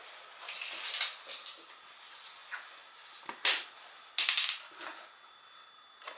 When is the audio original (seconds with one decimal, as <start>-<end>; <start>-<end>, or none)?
0.0-6.2